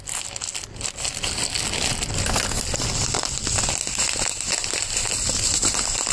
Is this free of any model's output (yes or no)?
yes